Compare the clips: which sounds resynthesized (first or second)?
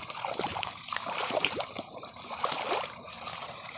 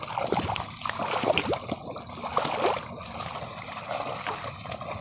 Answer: first